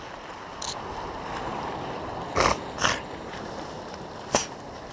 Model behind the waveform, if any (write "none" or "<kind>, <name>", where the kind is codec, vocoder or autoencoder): none